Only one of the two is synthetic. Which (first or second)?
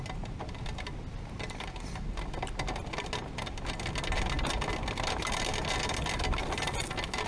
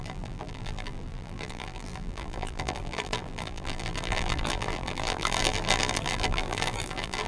second